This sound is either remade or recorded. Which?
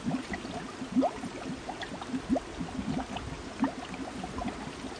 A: recorded